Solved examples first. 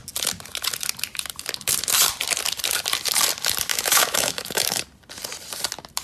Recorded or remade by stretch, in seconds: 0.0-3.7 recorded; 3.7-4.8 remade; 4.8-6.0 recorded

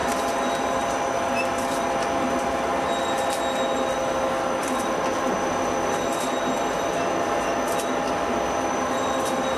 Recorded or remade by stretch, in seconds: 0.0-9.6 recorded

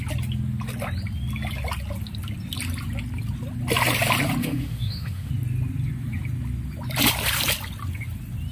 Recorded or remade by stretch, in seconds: 0.0-4.4 recorded; 4.4-5.3 remade; 5.3-8.5 recorded

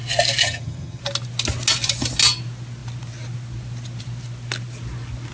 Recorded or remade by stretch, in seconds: 0.0-0.4 recorded; 0.4-1.0 remade; 1.0-5.3 recorded

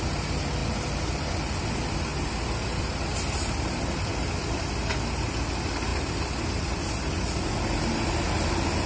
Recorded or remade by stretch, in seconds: 0.0-8.9 recorded